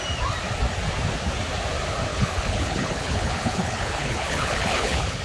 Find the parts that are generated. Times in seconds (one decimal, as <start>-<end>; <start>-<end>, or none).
2.1-5.2